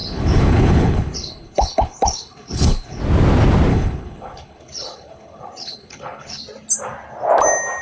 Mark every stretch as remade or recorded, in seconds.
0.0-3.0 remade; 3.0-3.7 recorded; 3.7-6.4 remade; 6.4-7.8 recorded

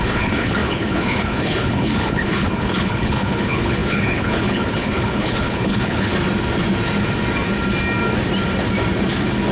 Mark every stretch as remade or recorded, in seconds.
0.0-6.1 remade; 6.1-9.5 recorded

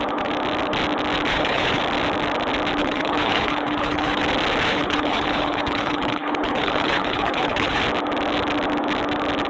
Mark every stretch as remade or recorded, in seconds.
0.0-1.3 recorded; 1.3-1.8 remade; 1.8-2.8 recorded; 2.8-4.2 remade; 4.2-4.7 recorded; 4.7-7.8 remade; 7.8-9.5 recorded

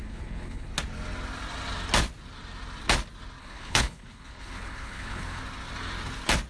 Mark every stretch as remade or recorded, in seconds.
0.0-0.7 remade; 0.7-3.4 recorded; 3.4-5.4 remade; 5.4-6.5 recorded

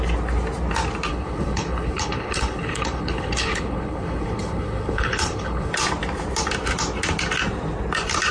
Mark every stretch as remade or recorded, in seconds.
0.0-1.1 recorded; 1.1-5.7 remade; 5.7-8.3 recorded

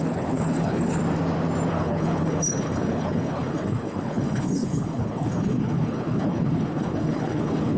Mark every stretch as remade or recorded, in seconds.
0.0-1.0 remade; 1.0-1.7 recorded; 1.7-7.8 remade

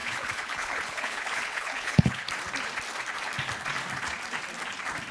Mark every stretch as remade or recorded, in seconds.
0.0-2.3 remade; 2.3-5.1 recorded

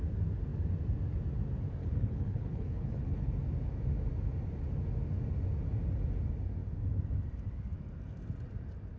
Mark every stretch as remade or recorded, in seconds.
0.0-1.8 recorded; 1.8-3.3 remade; 3.3-9.0 recorded